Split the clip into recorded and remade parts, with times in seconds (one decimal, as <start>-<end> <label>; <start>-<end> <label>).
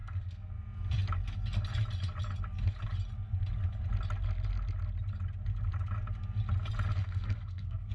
0.0-0.5 remade; 0.5-7.0 recorded; 7.0-7.9 remade